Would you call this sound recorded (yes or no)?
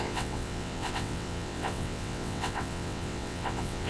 no